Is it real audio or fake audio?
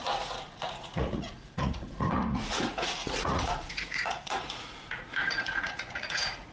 fake